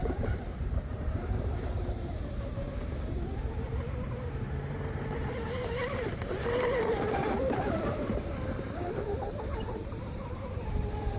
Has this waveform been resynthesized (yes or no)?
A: yes